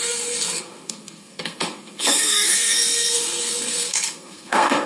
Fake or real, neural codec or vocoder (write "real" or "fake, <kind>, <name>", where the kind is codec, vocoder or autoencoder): fake, codec, SNAC